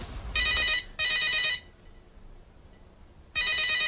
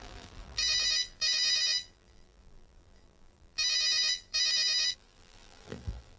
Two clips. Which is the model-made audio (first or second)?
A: second